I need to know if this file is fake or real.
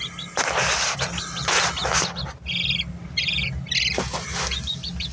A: real